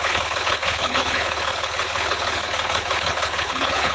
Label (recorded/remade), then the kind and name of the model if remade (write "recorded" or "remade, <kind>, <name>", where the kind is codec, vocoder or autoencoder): remade, codec, HILCodec